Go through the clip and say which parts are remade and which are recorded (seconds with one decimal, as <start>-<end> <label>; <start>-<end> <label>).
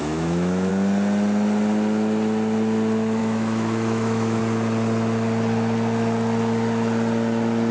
0.0-0.7 remade; 0.7-3.2 recorded; 3.2-4.4 remade; 4.4-7.7 recorded